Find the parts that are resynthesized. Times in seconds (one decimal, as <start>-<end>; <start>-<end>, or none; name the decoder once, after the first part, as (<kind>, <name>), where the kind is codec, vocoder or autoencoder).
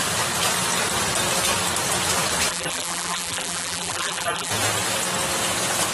2.5-4.5 (vocoder, BigVGAN v2)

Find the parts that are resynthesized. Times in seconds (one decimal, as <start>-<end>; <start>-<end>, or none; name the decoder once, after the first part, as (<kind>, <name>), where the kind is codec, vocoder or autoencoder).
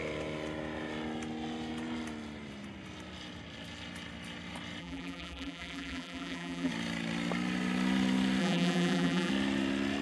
4.8-6.7 (vocoder, BigVGAN v2); 8.4-9.3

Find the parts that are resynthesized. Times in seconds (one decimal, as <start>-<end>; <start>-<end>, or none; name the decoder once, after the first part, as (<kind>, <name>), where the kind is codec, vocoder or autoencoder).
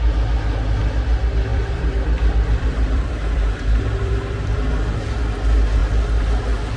1.5-4.7 (vocoder, BigVGAN v2)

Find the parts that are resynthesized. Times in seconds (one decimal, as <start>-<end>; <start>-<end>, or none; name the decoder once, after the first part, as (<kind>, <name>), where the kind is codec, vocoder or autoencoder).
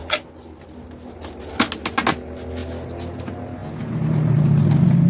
none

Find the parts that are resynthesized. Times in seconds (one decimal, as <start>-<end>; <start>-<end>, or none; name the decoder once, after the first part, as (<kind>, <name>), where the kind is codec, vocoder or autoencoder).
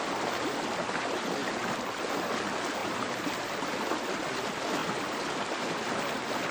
2.8-3.4 (vocoder, BigVGAN v2); 4.8-5.8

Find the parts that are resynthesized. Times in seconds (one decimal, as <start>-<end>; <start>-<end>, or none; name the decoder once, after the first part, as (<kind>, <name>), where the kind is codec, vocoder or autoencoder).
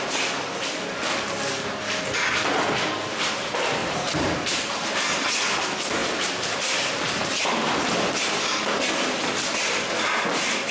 3.8-5.2 (vocoder, BigVGAN v2); 6.0-7.8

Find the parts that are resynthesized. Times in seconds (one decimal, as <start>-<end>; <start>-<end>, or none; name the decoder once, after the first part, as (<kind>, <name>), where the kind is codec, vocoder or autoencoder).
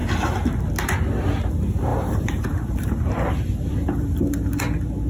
1.9-4.6 (vocoder, BigVGAN v2)